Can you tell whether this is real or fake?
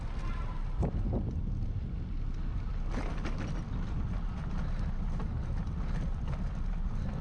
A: real